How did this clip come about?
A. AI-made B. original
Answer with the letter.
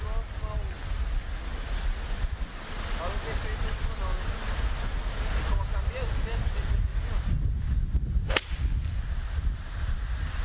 B